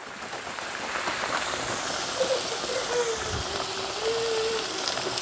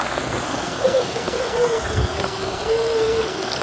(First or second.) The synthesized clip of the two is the second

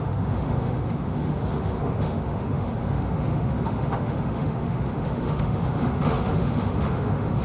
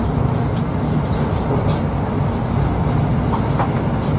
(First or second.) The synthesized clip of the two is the first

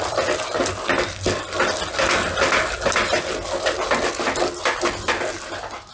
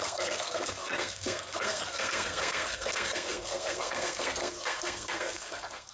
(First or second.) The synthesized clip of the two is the second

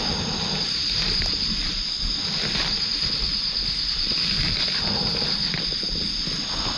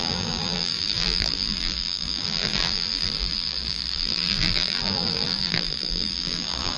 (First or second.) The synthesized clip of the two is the second